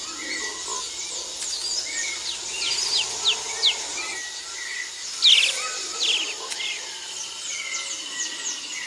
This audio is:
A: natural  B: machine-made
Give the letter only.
A